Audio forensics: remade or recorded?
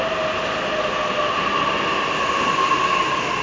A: recorded